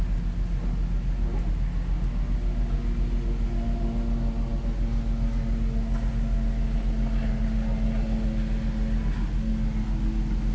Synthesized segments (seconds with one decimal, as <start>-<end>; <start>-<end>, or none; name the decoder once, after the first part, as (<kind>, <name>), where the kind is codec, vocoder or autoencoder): none